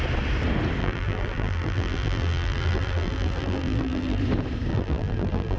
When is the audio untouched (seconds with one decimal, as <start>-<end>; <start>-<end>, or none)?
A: 0.0-0.8; 4.2-4.7